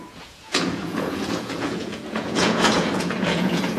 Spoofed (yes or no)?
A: yes